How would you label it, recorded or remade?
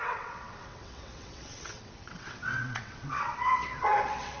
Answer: remade